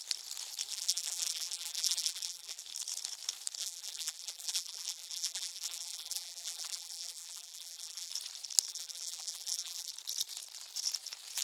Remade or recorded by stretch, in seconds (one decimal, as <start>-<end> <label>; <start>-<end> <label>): 0.0-0.7 recorded; 0.7-2.6 remade; 2.6-3.6 recorded; 3.6-8.1 remade; 8.1-8.7 recorded; 8.7-9.9 remade; 9.9-11.4 recorded